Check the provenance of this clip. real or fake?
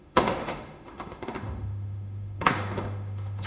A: fake